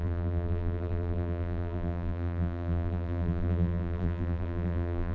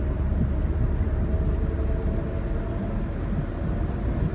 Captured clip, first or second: second